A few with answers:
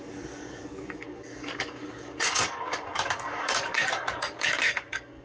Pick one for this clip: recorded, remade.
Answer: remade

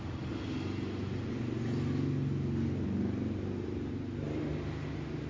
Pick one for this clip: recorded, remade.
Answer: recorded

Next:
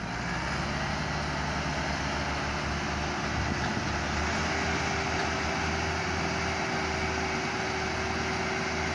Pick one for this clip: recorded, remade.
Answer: recorded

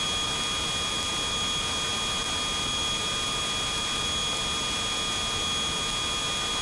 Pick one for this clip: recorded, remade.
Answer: recorded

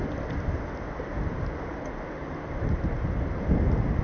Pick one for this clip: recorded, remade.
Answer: recorded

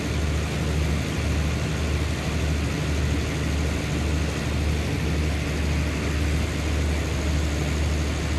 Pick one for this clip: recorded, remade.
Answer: recorded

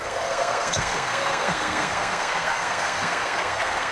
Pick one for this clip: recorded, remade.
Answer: remade